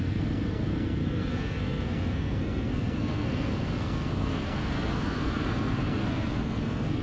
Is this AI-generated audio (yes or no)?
yes